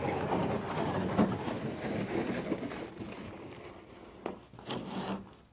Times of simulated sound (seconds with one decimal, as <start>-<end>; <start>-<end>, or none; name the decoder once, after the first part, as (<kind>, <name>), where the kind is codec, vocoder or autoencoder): none

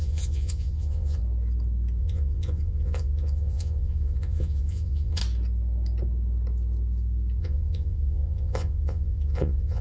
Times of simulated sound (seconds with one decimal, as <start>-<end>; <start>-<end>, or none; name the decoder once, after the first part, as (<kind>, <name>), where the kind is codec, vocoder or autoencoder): 0.0-1.2 (vocoder, Vocos); 2.0-5.2; 7.4-9.8

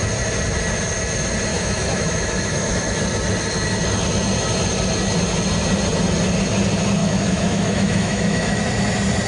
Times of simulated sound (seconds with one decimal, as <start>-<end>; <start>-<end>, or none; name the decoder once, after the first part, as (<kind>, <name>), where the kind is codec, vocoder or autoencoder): 1.5-3.0 (autoencoder, DAC-VAE); 7.0-8.6

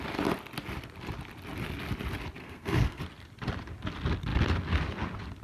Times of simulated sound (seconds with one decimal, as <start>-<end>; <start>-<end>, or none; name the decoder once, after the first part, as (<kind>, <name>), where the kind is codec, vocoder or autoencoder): 2.4-3.0 (codec, SNAC)

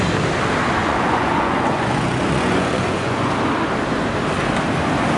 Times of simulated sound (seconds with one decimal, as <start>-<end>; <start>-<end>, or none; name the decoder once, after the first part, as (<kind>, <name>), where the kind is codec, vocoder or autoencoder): 0.8-3.3 (vocoder, Vocos)